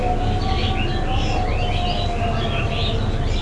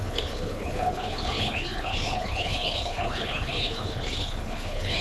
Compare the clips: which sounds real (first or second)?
first